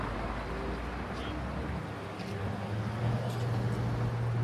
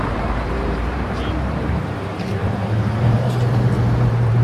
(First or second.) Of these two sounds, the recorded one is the first